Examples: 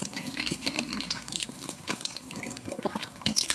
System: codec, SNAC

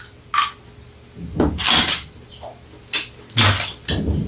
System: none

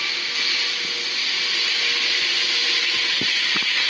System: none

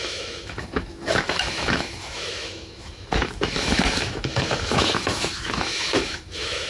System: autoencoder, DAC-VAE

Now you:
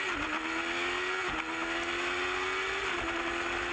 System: none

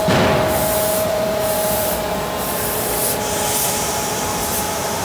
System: vocoder, BigVGAN v2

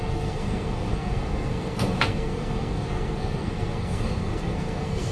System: codec, SNAC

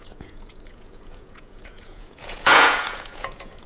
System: vocoder, Vocos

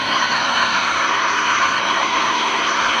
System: codec, SNAC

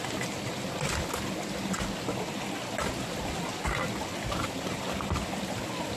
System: none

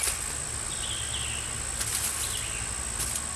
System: none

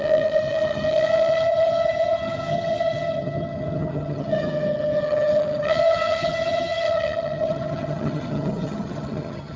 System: vocoder, HiFi-GAN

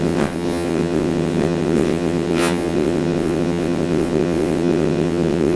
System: vocoder, WaveNeXt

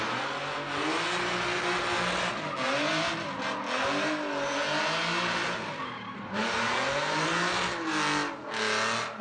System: none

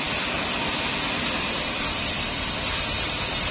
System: none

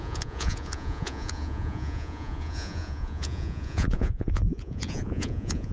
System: vocoder, Vocos